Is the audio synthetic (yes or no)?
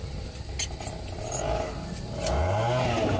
no